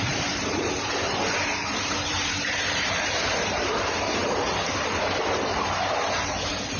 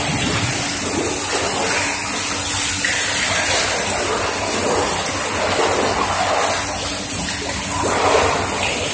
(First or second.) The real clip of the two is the second